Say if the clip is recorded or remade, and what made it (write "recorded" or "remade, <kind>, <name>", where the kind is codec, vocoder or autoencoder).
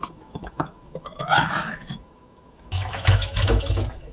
remade, autoencoder, DAC-VAE